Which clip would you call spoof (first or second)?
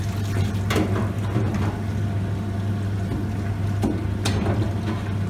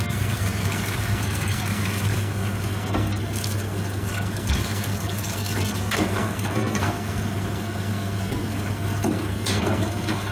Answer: second